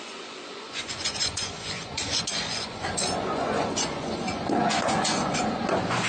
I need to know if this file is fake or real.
fake